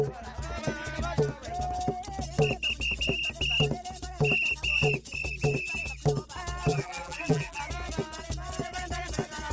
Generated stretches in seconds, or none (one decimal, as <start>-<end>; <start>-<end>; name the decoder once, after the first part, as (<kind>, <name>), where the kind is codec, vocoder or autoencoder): 6.7-7.6 (vocoder, BigVGAN v2)